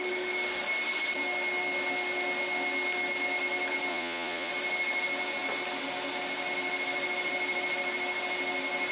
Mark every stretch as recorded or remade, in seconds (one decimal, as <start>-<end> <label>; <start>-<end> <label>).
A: 0.0-3.9 recorded; 3.9-4.5 remade; 4.5-8.9 recorded